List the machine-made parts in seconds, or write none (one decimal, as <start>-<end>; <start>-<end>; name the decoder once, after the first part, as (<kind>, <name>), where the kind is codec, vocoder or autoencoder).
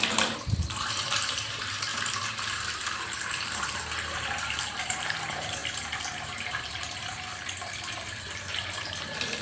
0.0-5.6 (vocoder, BigVGAN v2); 6.2-7.3; 8.1-9.4